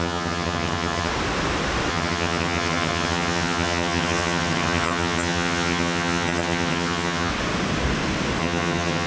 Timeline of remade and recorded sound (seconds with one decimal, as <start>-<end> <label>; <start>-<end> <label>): 0.0-1.1 remade; 1.1-1.9 recorded; 1.9-7.3 remade; 7.3-8.4 recorded; 8.4-9.1 remade